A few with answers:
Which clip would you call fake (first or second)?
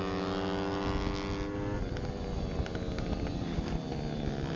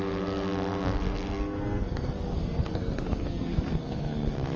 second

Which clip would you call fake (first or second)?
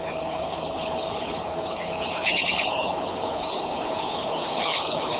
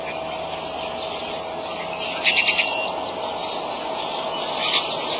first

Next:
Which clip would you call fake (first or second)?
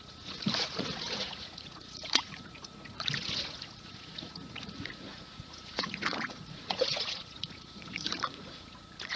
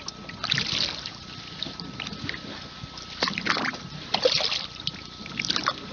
first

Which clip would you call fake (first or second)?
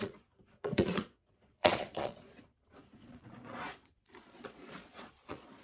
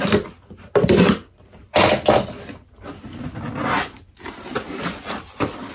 first